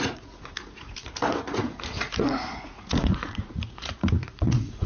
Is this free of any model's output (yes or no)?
no